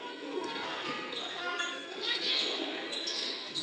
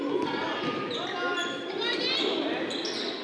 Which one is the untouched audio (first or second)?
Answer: second